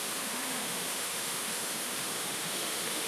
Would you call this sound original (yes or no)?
no